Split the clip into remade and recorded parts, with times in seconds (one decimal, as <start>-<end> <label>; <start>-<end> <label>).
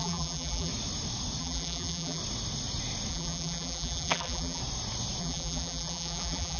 0.0-0.7 remade; 0.7-1.4 recorded; 1.4-2.2 remade; 2.2-3.1 recorded; 3.1-4.6 remade; 4.6-5.2 recorded; 5.2-6.6 remade